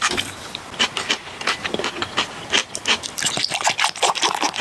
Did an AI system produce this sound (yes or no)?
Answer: no